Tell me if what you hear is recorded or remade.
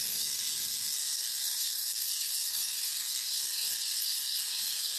remade